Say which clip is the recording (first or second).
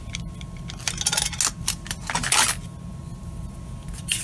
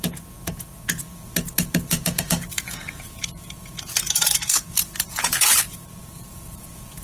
first